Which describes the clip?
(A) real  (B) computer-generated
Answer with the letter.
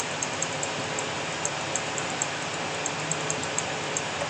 A